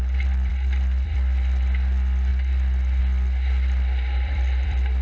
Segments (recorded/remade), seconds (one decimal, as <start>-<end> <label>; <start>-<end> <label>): 0.0-2.3 remade; 2.3-3.0 recorded; 3.0-5.0 remade